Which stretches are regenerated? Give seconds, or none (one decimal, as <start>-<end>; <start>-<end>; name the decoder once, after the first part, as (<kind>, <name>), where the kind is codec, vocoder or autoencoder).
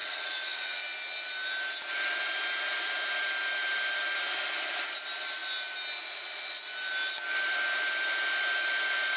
0.0-0.8 (vocoder, WaveNeXt)